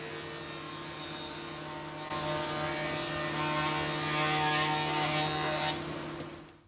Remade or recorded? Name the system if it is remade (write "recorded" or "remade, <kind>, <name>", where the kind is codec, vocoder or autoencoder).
recorded